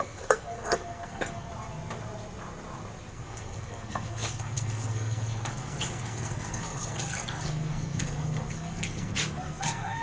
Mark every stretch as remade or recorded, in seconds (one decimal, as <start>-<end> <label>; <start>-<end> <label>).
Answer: 0.0-1.5 remade; 1.5-3.1 recorded; 3.1-10.0 remade